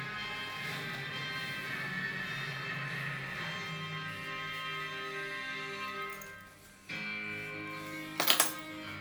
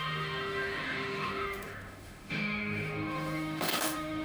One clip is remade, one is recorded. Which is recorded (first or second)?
first